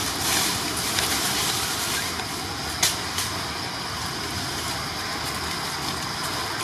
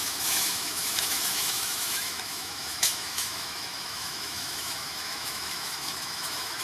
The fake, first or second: second